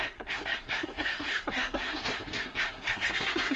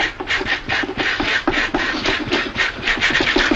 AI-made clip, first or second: first